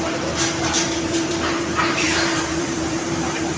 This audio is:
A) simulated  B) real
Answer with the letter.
A